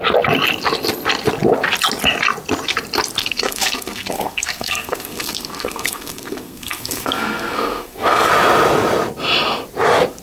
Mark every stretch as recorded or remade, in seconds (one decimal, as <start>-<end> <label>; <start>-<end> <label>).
0.0-3.2 recorded; 3.2-8.3 remade; 8.3-10.2 recorded